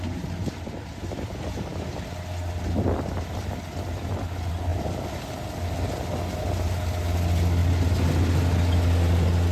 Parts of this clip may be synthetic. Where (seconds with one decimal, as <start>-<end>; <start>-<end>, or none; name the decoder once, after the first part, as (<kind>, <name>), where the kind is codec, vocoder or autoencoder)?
4.7-6.1 (vocoder, BigVGAN v2)